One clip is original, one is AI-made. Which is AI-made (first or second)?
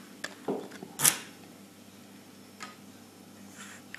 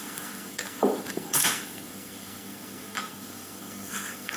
second